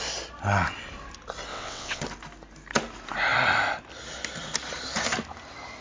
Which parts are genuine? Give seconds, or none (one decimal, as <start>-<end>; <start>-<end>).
0.0-1.5; 2.0-5.8